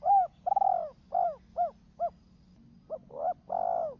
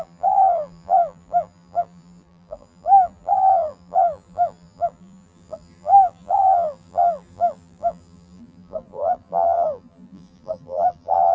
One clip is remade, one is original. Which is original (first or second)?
first